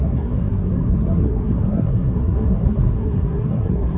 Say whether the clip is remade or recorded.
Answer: remade